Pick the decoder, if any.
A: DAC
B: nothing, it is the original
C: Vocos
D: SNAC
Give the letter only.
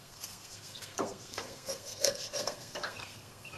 D